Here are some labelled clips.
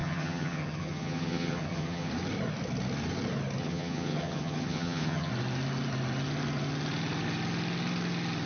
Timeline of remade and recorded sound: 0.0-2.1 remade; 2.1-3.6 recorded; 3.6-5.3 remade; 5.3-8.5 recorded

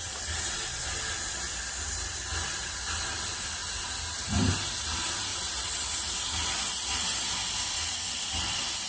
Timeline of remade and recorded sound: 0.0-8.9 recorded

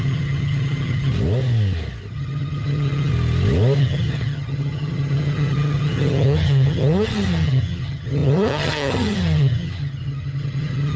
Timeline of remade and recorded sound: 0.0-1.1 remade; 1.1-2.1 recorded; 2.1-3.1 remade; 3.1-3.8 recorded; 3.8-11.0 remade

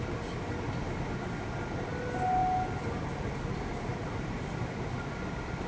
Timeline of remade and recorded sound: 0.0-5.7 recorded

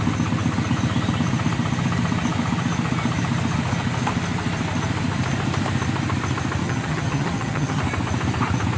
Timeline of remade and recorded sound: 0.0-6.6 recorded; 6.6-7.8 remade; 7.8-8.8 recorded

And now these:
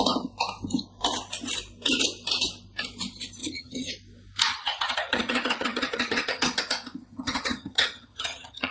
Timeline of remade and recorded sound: 0.0-3.4 recorded; 3.4-3.9 remade; 3.9-4.5 recorded; 4.5-6.6 remade; 6.6-7.1 recorded; 7.1-8.7 remade

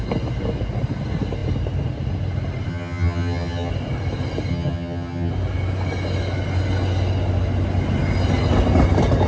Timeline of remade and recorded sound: 0.0-2.7 recorded; 2.7-3.7 remade; 3.7-4.5 recorded; 4.5-5.3 remade; 5.3-9.3 recorded

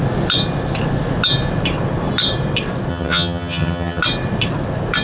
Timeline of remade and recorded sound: 0.0-2.9 recorded; 2.9-4.0 remade; 4.0-5.0 recorded